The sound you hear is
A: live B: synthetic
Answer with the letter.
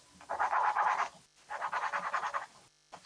A